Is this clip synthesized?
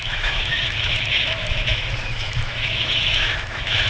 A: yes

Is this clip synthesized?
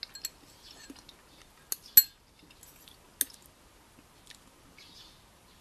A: no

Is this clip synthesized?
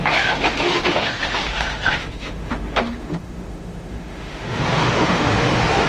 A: yes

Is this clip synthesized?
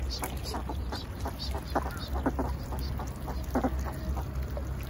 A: no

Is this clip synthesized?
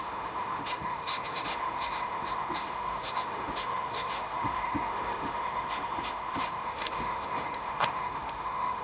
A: yes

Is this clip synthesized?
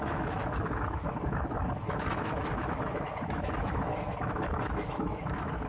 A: yes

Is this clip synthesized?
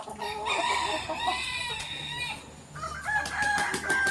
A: no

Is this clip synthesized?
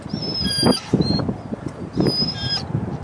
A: no